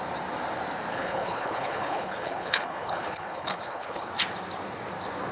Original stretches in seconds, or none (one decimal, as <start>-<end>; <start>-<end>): 0.0-0.9; 4.1-5.3